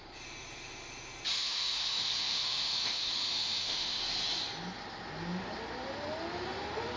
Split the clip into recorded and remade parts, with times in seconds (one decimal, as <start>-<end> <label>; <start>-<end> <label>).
0.0-1.3 recorded; 1.3-4.0 remade; 4.0-7.0 recorded